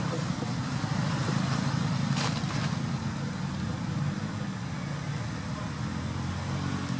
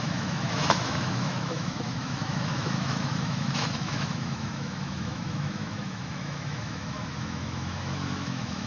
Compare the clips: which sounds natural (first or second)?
first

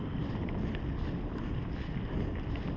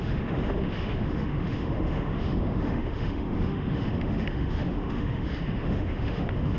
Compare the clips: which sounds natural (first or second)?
first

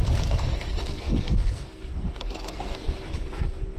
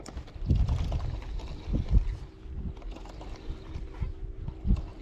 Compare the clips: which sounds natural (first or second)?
second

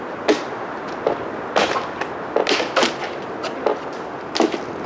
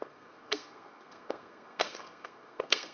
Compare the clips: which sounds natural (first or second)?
first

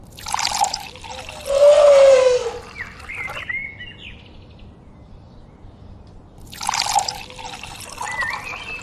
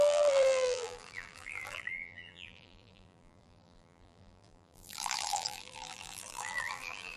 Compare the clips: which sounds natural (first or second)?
first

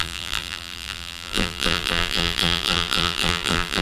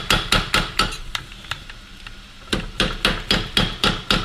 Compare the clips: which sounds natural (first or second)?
second